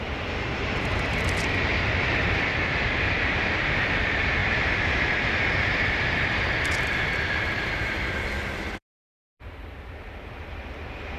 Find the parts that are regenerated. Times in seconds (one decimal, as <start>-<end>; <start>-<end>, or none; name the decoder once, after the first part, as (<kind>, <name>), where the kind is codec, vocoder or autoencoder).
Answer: 0.0-11.2 (vocoder, BigVGAN v2)